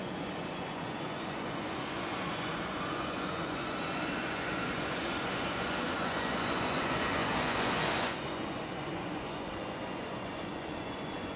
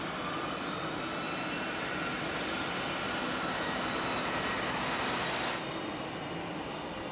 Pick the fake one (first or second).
first